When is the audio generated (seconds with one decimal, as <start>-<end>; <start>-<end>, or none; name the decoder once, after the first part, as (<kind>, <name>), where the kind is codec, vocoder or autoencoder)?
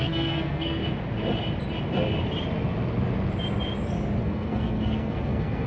0.0-0.8 (codec, SNAC); 4.2-5.7